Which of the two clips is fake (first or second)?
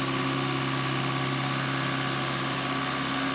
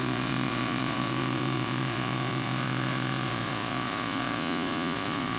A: second